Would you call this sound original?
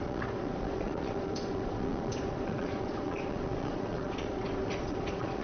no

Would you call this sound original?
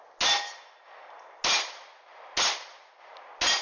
yes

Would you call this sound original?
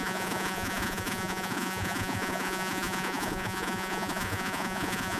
no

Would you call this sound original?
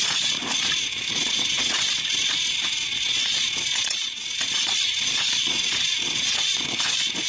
no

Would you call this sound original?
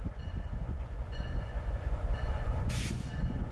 no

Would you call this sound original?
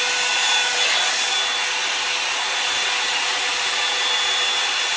yes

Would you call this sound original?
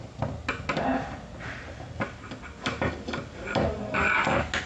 yes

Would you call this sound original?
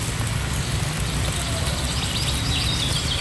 yes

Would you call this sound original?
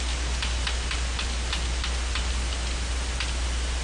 yes